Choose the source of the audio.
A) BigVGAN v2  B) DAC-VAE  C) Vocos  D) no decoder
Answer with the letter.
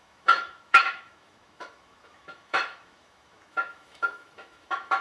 B